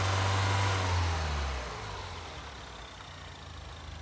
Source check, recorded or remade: recorded